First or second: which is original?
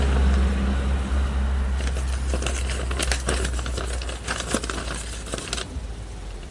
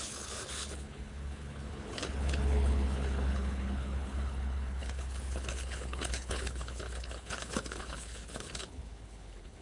first